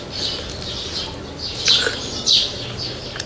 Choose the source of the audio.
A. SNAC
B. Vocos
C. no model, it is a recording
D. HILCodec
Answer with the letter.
C